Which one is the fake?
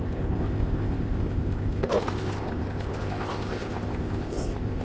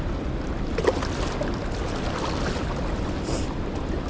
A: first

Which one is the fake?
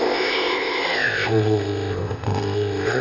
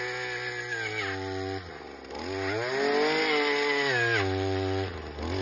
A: first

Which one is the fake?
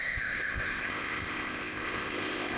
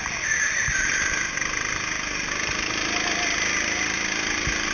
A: first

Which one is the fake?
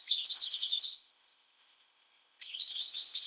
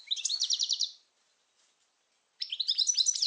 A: first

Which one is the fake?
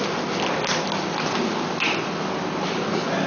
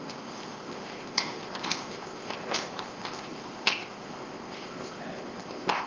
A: second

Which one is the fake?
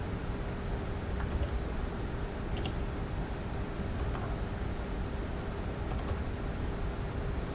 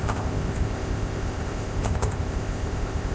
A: second